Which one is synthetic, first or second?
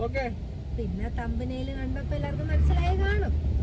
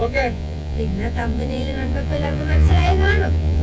second